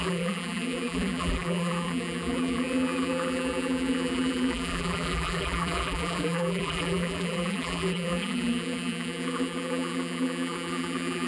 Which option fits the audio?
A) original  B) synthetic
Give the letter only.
B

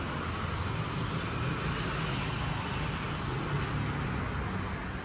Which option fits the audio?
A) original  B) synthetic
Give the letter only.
A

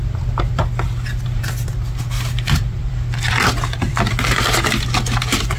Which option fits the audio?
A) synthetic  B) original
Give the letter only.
A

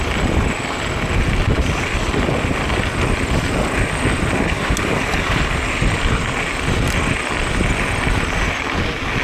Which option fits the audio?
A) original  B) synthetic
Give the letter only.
A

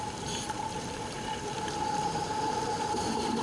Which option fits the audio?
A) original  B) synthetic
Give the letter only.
B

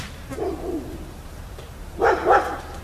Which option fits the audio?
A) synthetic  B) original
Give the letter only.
A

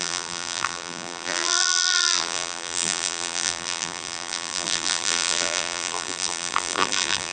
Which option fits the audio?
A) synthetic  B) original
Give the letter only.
A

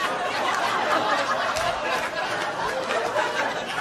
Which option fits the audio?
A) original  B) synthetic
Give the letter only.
A